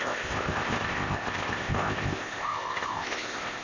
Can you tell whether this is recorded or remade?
remade